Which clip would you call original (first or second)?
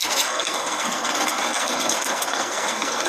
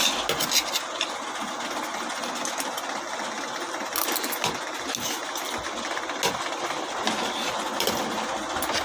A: second